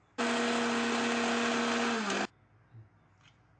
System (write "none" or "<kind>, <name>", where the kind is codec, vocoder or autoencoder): none